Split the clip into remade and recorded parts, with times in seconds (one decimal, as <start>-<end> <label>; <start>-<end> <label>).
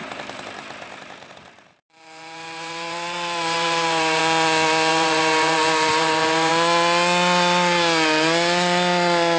0.0-4.2 remade; 4.2-4.9 recorded; 4.9-6.5 remade; 6.5-9.4 recorded